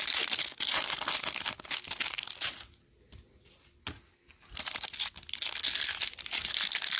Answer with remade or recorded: recorded